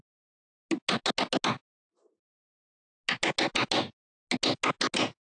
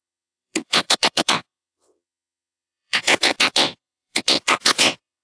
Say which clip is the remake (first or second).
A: second